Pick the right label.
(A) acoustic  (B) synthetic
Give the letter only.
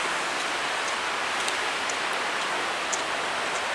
A